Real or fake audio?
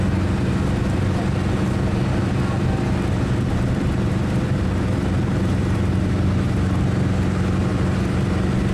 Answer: real